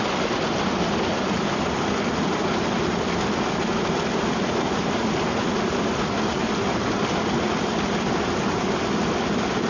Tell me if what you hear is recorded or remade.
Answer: recorded